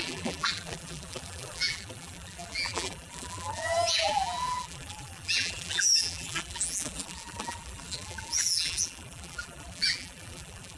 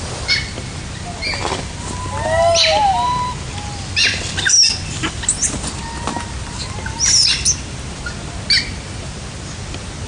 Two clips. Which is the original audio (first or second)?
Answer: second